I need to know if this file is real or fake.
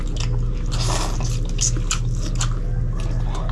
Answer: real